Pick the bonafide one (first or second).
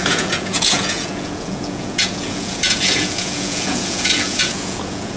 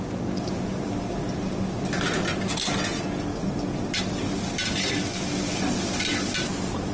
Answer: second